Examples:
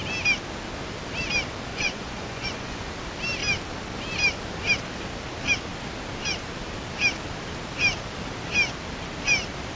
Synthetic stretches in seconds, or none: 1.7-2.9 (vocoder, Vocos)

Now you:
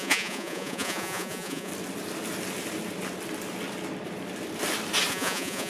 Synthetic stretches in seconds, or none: 0.0-1.7 (vocoder, Vocos); 5.1-5.7

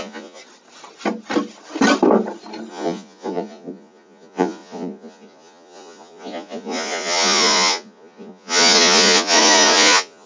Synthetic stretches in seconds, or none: 0.0-0.4 (vocoder, Vocos); 2.7-10.3

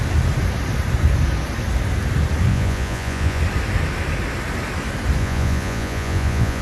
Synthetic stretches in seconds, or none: 2.5-3.4 (vocoder, Vocos); 5.2-6.6

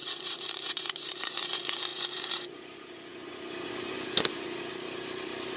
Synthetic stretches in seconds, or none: 0.0-4.7 (vocoder, Vocos)

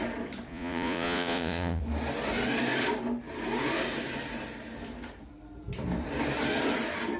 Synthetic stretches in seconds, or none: 0.5-1.8 (vocoder, Vocos)